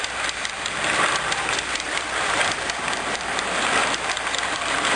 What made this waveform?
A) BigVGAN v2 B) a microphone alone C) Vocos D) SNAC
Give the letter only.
A